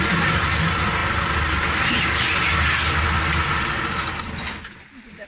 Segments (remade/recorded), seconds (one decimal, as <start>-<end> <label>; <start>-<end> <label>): 0.0-5.3 recorded